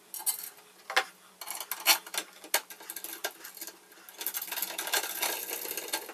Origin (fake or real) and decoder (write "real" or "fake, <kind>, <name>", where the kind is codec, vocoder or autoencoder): real